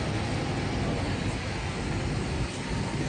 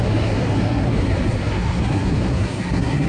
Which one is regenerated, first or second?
second